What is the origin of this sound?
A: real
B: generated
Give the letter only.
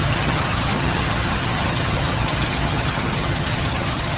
B